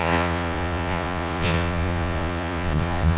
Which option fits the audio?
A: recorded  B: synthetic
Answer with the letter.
B